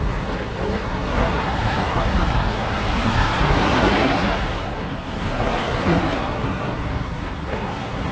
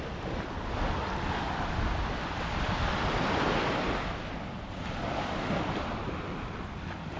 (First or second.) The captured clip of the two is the second